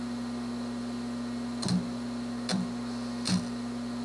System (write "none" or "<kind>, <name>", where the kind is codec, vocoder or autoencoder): none